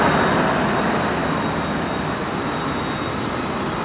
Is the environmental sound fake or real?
real